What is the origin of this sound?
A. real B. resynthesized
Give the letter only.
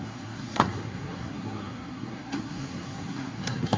B